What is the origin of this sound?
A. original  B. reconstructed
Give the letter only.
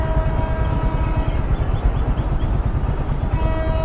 A